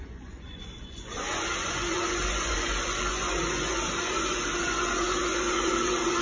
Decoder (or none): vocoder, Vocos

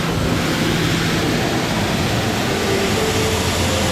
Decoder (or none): none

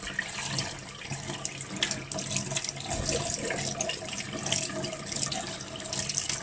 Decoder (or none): none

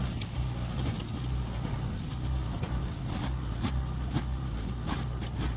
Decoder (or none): none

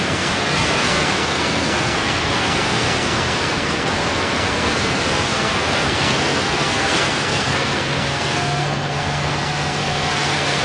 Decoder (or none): codec, SNAC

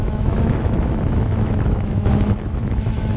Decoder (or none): autoencoder, DAC-VAE